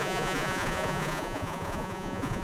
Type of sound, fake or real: fake